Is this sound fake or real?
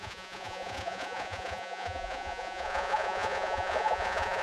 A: fake